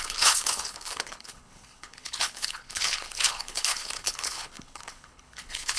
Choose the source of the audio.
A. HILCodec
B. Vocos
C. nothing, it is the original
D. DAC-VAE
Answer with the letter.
A